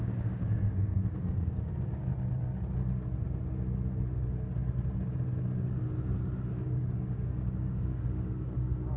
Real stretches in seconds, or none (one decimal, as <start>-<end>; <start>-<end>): 2.1-6.5